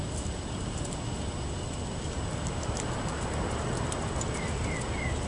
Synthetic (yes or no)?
no